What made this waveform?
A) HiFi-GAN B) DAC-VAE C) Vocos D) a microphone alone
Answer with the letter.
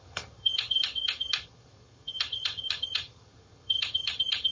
A